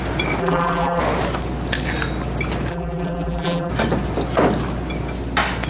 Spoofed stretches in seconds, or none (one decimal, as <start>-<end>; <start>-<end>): 0.4-1.0; 2.7-3.7